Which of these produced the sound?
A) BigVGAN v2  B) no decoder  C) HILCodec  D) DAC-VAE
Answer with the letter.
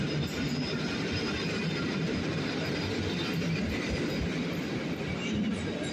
B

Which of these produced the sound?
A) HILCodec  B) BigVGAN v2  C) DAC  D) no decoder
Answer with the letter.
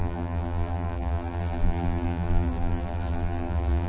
B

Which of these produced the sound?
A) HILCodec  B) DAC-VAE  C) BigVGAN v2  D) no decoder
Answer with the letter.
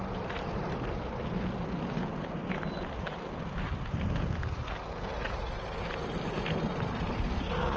D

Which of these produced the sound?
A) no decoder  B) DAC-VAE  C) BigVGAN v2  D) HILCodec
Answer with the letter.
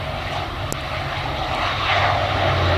A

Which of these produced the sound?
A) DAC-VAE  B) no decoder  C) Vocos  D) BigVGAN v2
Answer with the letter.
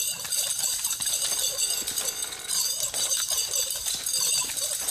B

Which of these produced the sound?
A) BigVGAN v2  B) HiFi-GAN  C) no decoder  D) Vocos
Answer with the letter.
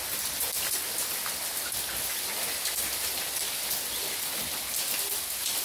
C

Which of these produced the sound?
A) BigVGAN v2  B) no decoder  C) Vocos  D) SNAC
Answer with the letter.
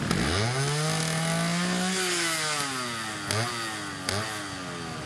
B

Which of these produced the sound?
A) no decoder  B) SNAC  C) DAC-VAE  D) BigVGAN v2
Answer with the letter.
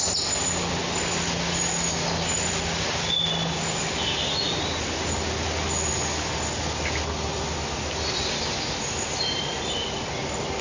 A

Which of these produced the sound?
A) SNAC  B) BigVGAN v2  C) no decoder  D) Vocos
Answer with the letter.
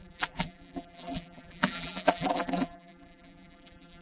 B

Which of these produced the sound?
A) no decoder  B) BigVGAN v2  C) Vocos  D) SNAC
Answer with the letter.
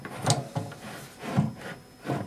A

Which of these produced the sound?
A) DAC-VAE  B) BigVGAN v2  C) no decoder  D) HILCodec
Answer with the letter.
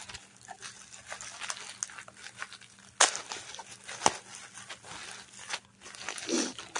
C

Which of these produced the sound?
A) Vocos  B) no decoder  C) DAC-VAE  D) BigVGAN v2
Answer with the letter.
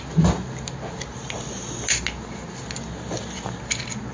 B